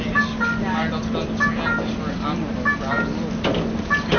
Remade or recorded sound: recorded